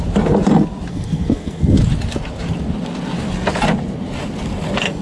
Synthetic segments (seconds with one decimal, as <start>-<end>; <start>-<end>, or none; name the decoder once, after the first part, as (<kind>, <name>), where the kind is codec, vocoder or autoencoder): 0.9-1.8 (codec, SNAC)